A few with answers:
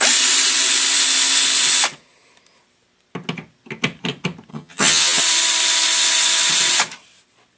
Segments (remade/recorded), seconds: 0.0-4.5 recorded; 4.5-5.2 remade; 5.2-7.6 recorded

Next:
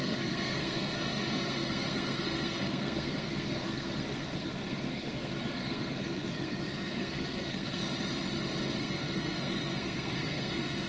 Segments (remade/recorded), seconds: 0.0-7.8 remade; 7.8-8.8 recorded; 8.8-10.9 remade